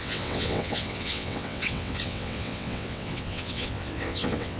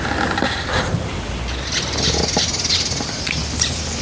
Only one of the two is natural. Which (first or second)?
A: second